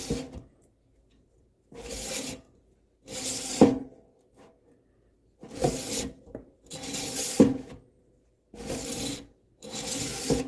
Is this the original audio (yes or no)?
yes